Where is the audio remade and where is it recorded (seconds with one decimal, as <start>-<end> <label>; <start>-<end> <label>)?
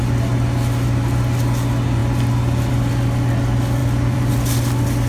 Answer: 0.0-3.8 recorded; 3.8-4.3 remade; 4.3-5.1 recorded